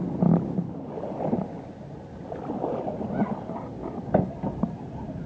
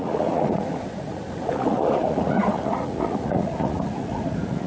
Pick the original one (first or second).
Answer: first